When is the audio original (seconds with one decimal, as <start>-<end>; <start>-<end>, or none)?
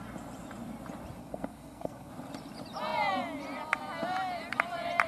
0.0-1.2; 2.1-5.1